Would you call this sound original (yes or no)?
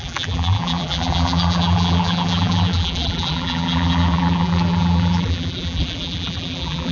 no